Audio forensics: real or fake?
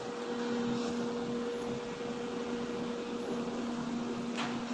real